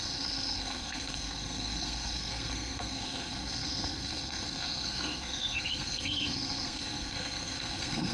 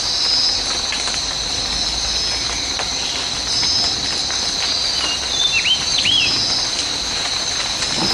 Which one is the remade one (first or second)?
first